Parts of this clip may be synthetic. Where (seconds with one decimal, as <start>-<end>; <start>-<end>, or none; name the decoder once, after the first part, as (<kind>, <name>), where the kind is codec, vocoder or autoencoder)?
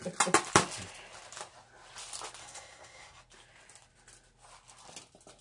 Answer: 2.4-3.2 (codec, SNAC)